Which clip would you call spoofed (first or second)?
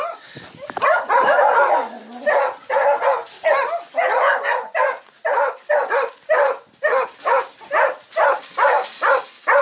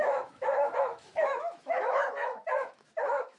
second